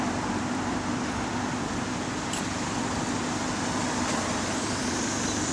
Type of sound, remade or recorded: remade